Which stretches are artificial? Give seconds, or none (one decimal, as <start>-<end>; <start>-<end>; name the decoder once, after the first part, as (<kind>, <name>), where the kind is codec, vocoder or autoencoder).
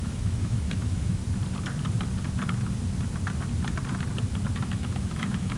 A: 0.0-1.2 (autoencoder, DAC-VAE); 4.6-5.6